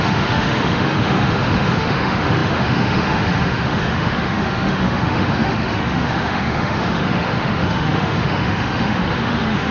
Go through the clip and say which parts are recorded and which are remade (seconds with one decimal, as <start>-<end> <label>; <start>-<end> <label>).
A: 0.0-9.7 remade